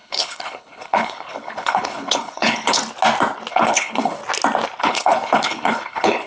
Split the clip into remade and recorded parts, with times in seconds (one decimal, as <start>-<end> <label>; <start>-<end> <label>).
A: 0.0-2.8 remade; 2.8-3.5 recorded; 3.5-4.2 remade; 4.2-4.8 recorded; 4.8-6.3 remade